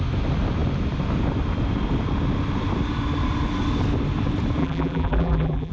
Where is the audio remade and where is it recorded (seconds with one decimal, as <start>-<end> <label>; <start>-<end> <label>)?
0.0-4.6 recorded; 4.6-5.7 remade